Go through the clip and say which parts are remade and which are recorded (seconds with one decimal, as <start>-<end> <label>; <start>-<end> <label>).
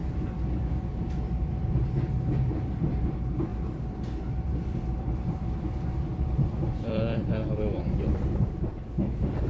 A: 0.0-0.9 recorded; 0.9-9.5 remade